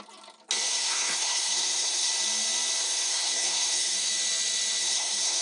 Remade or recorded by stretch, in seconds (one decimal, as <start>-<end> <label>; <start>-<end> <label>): 0.0-0.7 recorded; 0.7-2.1 remade; 2.1-2.8 recorded; 2.8-4.1 remade; 4.1-4.8 recorded; 4.8-5.4 remade